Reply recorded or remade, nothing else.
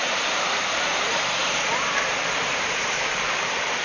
remade